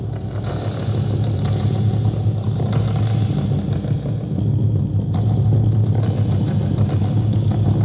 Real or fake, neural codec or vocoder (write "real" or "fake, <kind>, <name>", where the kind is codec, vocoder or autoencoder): real